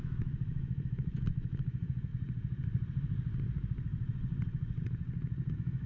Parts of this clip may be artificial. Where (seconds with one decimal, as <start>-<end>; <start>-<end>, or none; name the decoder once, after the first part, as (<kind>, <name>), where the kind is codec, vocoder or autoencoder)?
0.0-2.1 (autoencoder, DAC-VAE); 5.5-5.9